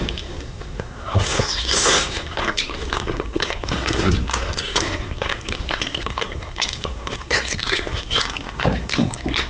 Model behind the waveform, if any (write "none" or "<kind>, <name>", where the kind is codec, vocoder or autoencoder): codec, SNAC